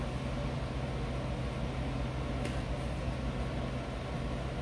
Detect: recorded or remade recorded